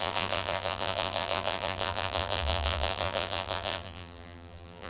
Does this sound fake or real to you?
fake